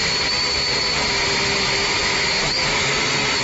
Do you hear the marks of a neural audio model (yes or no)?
no